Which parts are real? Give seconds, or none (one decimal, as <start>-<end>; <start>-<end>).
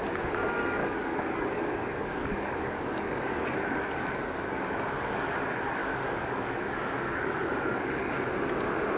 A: 0.0-0.8; 5.3-5.8; 8.1-9.0